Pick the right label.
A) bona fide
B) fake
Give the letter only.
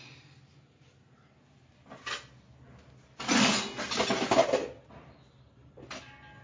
A